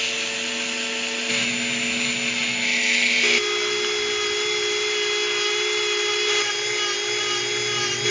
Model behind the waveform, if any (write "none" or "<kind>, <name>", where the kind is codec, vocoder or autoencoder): none